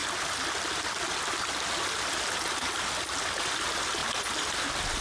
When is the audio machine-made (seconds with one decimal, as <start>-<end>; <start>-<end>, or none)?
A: none